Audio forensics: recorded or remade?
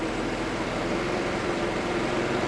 remade